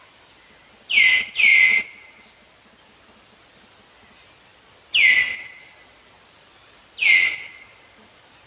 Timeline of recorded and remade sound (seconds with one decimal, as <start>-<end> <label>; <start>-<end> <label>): 0.0-8.5 recorded